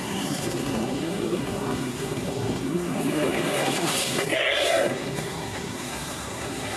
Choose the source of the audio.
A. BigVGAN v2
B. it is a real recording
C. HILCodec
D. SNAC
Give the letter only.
D